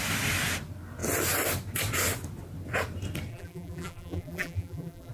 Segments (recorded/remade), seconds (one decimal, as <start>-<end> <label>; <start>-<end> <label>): 0.0-3.3 recorded; 3.3-5.1 remade